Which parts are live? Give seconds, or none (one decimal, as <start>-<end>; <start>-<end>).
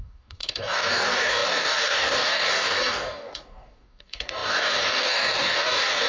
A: none